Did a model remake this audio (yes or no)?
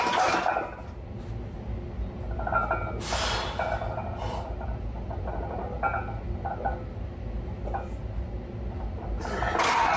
no